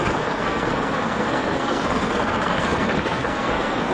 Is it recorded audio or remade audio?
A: remade